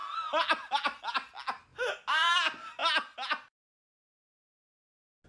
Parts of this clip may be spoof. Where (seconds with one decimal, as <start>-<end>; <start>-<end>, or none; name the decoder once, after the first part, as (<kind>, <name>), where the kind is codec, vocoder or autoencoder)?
none